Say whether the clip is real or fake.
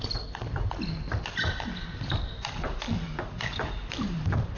real